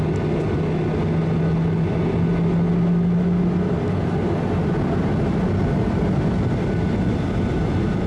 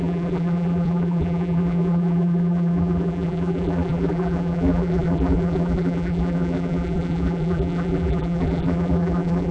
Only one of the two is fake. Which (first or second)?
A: second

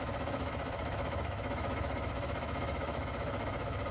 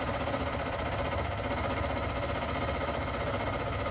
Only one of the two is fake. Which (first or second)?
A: first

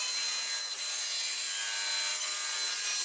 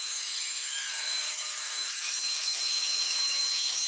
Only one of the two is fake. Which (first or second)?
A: second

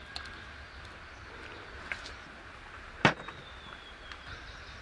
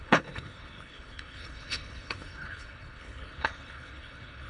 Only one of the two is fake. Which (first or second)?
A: second